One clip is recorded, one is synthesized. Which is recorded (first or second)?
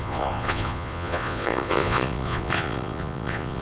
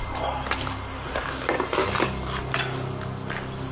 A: second